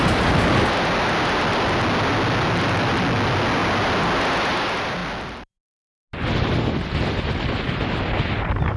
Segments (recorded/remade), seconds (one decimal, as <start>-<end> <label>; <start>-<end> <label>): 0.0-8.8 recorded